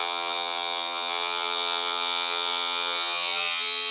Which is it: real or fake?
fake